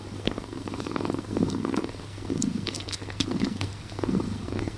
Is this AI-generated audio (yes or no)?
yes